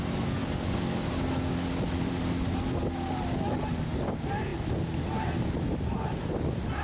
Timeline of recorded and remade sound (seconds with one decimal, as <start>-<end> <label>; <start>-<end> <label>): 0.0-6.8 recorded